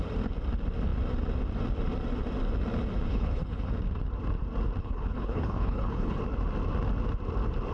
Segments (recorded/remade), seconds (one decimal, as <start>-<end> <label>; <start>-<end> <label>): 0.0-3.1 recorded; 3.1-3.7 remade; 3.7-4.8 recorded; 4.8-6.2 remade; 6.2-7.7 recorded